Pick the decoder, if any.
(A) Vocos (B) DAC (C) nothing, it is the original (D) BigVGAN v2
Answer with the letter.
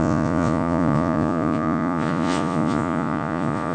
A